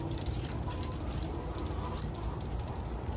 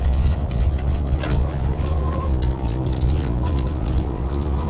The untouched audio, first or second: first